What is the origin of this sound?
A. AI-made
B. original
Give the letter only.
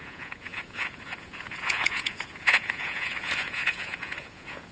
A